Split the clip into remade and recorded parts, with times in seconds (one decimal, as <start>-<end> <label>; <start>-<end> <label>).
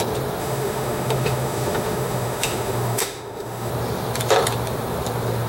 0.0-0.4 recorded; 0.4-3.7 remade; 3.7-5.5 recorded